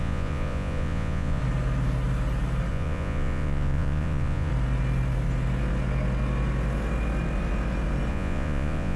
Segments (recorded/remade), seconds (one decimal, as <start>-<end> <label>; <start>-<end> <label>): 0.0-1.4 remade; 1.4-2.7 recorded; 2.7-4.5 remade; 4.5-8.1 recorded; 8.1-9.0 remade